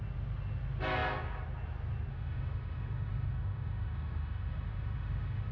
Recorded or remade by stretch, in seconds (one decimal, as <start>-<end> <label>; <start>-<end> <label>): 0.0-2.1 recorded; 2.1-5.5 remade